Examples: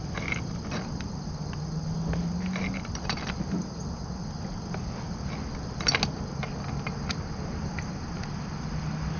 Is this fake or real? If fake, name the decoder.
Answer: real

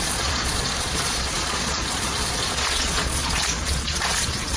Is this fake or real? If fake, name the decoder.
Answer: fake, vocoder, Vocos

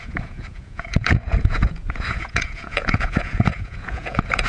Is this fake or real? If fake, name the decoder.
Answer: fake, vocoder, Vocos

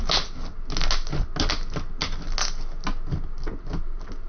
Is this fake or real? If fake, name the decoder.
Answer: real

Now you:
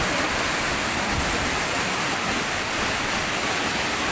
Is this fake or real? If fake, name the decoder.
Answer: real